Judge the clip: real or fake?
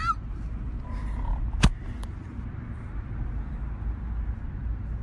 real